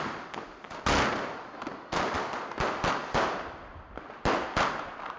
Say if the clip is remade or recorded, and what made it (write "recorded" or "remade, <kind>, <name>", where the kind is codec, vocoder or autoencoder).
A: recorded